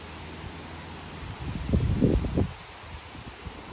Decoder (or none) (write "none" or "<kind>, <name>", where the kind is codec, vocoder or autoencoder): none